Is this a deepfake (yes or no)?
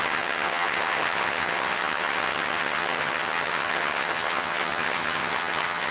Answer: yes